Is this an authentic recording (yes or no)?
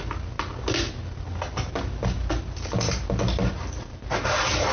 yes